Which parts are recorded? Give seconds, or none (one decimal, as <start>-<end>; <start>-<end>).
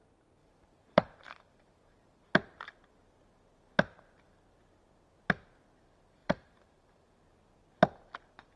0.0-0.4; 2.2-6.2; 7.2-8.6